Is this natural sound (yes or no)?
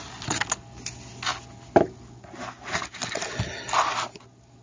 yes